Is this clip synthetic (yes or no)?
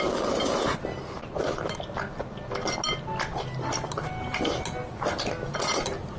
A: no